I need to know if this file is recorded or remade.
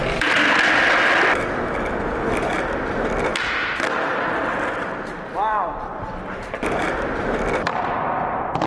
recorded